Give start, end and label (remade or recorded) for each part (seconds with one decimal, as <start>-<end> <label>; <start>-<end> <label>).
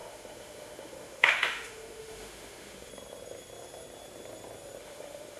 0.0-2.9 remade; 2.9-4.8 recorded; 4.8-5.4 remade